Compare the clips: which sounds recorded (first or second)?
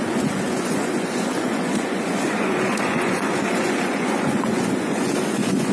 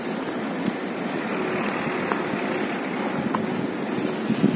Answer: second